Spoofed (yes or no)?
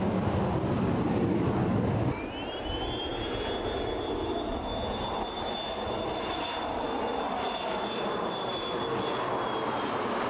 no